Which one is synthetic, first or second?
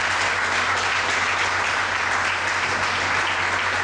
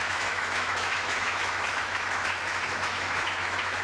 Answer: second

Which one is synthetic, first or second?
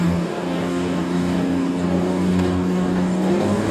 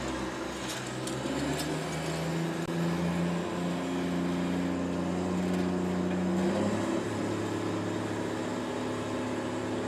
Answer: first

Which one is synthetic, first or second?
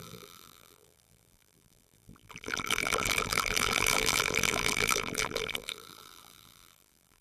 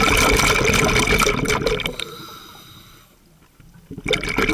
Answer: first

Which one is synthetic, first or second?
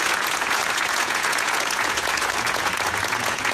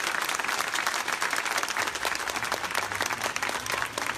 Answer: first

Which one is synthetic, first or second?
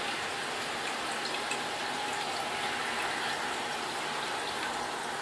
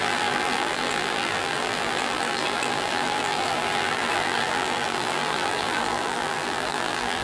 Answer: second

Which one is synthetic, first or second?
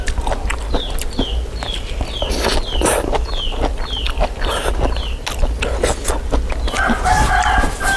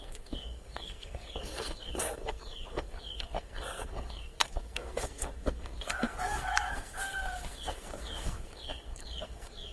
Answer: second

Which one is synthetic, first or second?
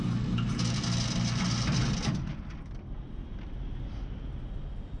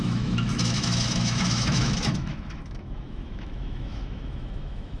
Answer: second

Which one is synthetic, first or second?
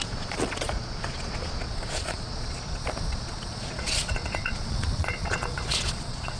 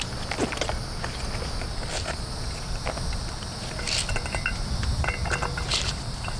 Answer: first